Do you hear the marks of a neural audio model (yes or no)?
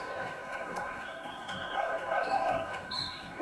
yes